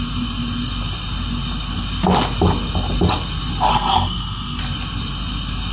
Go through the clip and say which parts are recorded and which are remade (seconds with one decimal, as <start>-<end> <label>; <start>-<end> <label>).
0.0-3.7 recorded; 3.7-4.6 remade; 4.6-5.7 recorded